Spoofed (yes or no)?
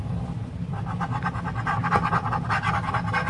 no